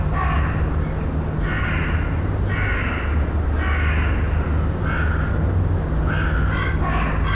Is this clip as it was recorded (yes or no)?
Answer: yes